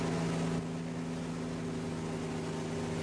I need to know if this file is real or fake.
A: real